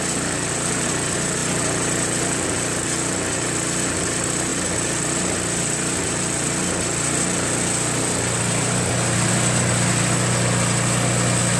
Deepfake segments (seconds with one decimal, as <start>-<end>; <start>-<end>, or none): none